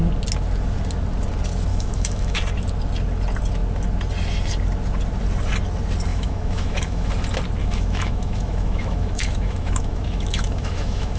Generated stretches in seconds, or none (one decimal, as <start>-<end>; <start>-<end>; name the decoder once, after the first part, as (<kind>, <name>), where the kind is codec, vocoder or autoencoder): 1.7-2.4 (autoencoder, DAC-VAE); 6.1-7.1; 7.6-11.2